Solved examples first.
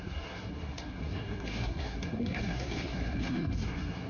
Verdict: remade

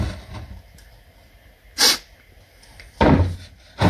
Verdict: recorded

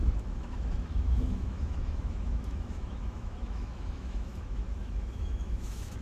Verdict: remade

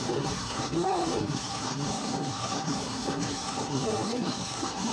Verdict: remade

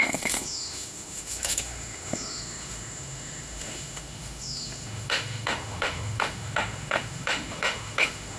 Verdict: remade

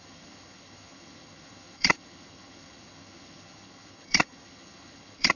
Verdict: remade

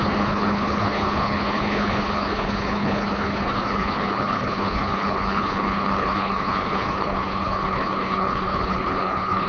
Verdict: remade